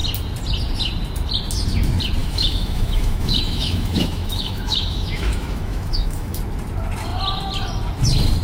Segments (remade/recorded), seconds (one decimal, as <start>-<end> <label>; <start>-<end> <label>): 0.0-2.2 recorded; 2.2-6.4 remade; 6.4-8.4 recorded